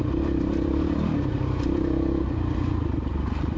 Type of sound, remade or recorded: remade